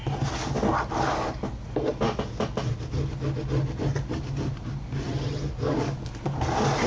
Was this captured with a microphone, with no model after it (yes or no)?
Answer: yes